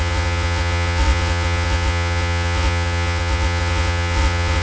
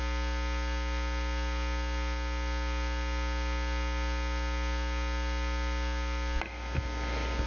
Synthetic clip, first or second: first